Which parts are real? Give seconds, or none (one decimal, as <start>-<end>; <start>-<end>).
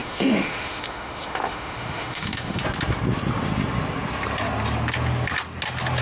2.6-6.0